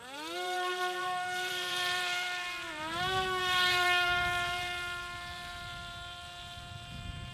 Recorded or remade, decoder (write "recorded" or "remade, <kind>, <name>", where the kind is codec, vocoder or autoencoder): remade, vocoder, BigVGAN v2